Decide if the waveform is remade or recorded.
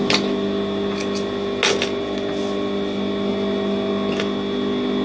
recorded